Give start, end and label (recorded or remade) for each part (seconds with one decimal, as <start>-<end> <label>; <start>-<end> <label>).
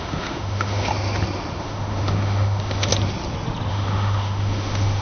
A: 0.0-0.9 remade; 0.9-1.6 recorded; 1.6-2.9 remade; 2.9-3.7 recorded; 3.7-5.0 remade